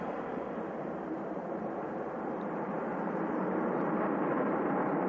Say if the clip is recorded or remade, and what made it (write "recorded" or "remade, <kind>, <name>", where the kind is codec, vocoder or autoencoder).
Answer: remade, vocoder, BigVGAN v2